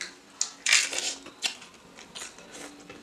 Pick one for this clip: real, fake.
real